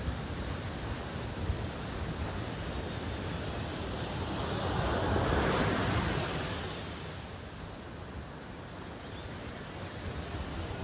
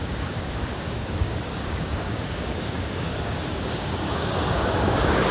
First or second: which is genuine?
first